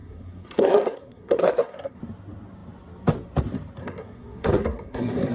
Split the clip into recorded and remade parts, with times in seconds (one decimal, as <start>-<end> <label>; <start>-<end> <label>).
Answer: 0.0-2.0 remade; 2.0-3.8 recorded; 3.8-5.3 remade